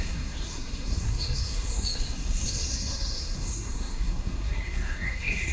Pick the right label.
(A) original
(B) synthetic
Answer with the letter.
B